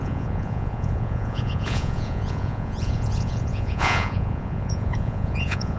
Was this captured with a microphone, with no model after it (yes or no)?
no